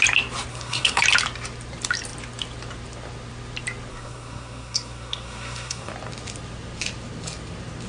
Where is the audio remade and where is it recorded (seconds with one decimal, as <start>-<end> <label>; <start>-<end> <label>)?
0.0-0.5 recorded; 0.5-1.0 remade; 1.0-3.9 recorded; 3.9-5.9 remade; 5.9-7.9 recorded